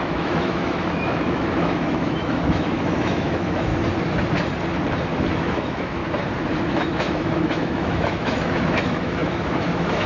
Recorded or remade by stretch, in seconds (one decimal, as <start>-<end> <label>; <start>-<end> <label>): 0.0-3.7 remade; 3.7-5.3 recorded; 5.3-6.0 remade; 6.0-6.6 recorded; 6.6-10.1 remade